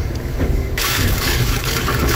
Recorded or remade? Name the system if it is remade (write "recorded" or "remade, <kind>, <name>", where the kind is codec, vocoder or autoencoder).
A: remade, codec, DAC